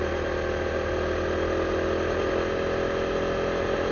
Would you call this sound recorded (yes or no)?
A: yes